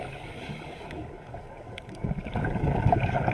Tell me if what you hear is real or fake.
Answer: fake